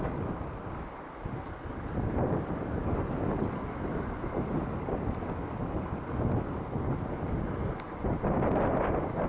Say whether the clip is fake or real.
real